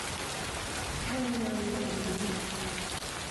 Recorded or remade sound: recorded